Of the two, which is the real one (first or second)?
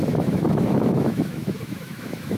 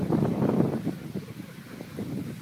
second